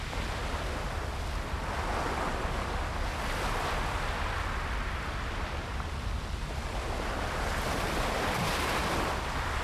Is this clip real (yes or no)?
yes